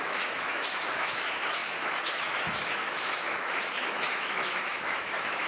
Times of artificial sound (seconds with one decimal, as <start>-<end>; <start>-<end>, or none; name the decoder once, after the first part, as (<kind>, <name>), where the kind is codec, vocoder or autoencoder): 0.0-5.5 (autoencoder, DAC-VAE)